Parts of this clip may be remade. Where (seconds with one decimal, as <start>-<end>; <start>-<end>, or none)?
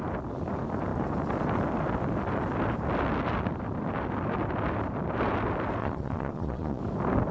5.8-6.8